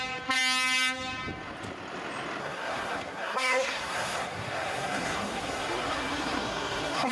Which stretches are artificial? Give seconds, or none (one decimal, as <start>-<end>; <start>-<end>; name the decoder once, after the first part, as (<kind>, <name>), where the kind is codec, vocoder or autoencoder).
2.4-7.1 (codec, SNAC)